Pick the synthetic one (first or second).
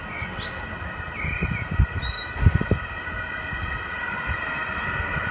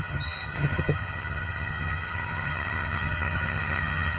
second